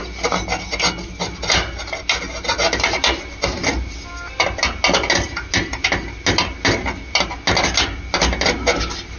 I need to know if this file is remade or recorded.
recorded